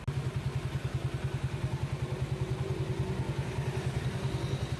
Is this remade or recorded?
recorded